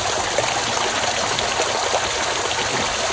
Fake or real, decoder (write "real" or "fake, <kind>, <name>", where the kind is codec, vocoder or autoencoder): real